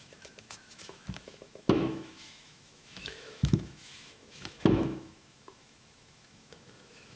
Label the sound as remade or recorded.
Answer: remade